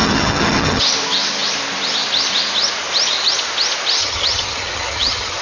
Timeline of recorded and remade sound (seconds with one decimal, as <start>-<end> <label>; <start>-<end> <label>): 0.0-0.8 remade; 0.8-4.0 recorded; 4.0-5.4 remade